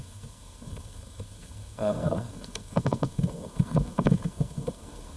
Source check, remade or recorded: remade